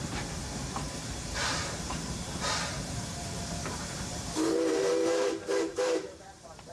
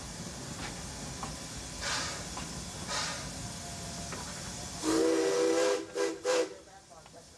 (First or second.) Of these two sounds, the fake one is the first